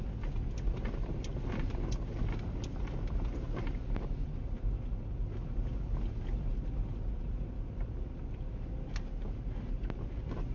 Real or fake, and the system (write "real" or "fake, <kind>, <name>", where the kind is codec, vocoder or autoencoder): real